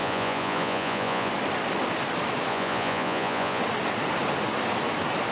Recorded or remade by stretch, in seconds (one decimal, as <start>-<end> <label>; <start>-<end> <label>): 0.0-1.3 remade; 1.3-2.5 recorded; 2.5-3.6 remade; 3.6-5.3 recorded